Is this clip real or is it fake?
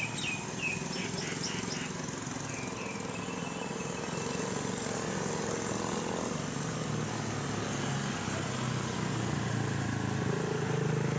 real